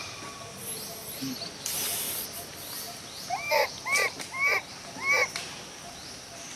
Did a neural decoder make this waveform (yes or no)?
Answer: no